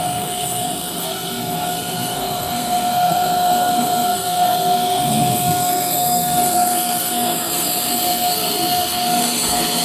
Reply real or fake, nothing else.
fake